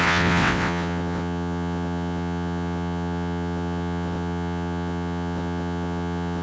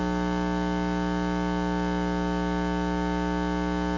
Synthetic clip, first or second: first